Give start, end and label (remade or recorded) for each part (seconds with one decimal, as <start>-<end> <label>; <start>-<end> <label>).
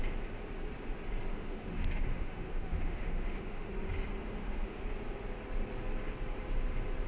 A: 0.0-1.3 recorded; 1.3-3.7 remade; 3.7-4.2 recorded; 4.2-4.8 remade; 4.8-7.1 recorded